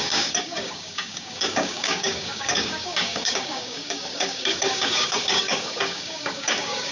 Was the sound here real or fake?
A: fake